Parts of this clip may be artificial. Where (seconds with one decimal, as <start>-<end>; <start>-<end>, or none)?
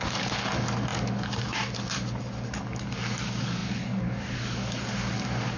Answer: 0.0-5.6